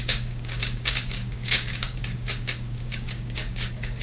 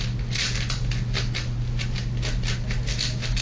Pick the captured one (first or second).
second